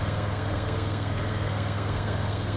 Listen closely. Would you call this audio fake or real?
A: fake